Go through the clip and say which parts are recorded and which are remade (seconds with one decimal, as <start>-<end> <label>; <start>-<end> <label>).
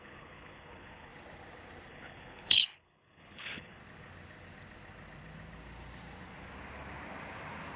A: 0.0-1.1 remade; 1.1-1.9 recorded; 1.9-3.8 remade; 3.8-7.8 recorded